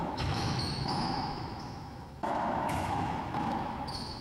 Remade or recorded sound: remade